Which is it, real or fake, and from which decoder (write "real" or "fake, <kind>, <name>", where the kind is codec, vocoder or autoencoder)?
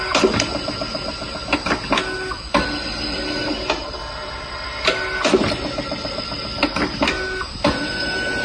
real